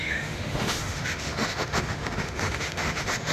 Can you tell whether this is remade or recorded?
remade